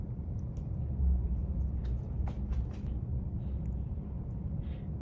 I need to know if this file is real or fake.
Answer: real